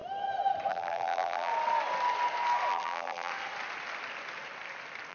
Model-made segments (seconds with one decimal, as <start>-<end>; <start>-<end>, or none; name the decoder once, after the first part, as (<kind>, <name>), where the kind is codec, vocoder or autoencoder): 0.7-1.5 (vocoder, BigVGAN v2); 2.7-3.3